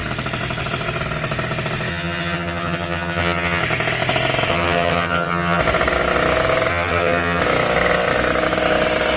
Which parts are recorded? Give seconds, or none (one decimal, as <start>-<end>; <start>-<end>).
0.0-1.9; 3.6-4.5; 5.6-6.7; 7.4-9.2